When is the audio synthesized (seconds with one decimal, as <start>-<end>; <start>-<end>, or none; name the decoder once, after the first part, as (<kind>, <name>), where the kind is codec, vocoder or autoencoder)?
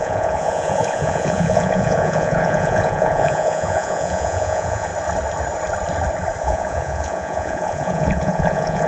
0.0-4.9 (vocoder, Vocos); 6.4-8.9